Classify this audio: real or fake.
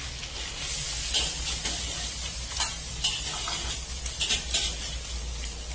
real